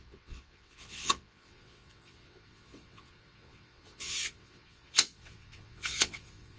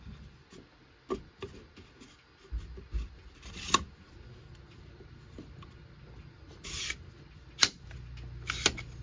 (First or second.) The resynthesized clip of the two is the first